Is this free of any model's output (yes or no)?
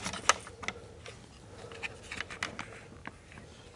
yes